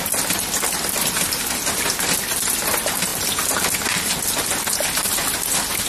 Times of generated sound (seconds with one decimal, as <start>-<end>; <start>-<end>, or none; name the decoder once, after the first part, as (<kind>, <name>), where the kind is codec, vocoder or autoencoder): none